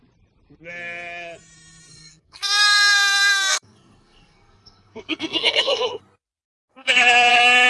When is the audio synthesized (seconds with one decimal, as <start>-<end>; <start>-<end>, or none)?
1.9-6.0; 6.7-7.3